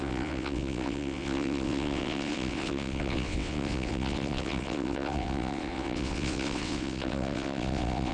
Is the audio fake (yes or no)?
yes